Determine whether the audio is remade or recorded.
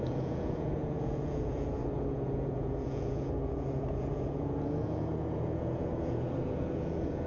remade